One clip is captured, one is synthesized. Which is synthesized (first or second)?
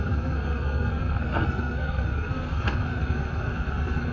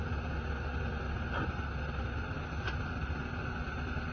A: first